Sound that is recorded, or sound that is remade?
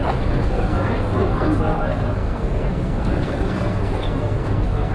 remade